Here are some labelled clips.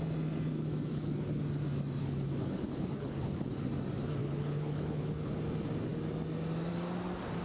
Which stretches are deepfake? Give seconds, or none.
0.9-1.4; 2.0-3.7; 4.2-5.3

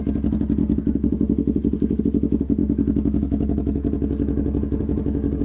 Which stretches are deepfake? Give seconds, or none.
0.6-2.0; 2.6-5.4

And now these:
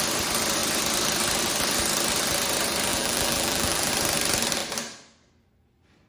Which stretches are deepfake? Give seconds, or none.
2.9-3.9

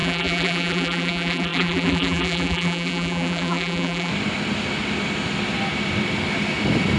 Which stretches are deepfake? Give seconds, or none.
0.0-4.1